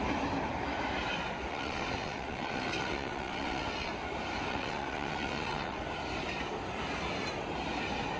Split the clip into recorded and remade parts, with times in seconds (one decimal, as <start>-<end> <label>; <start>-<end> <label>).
0.0-1.5 recorded; 1.5-3.9 remade; 3.9-4.5 recorded; 4.5-5.8 remade; 5.8-8.2 recorded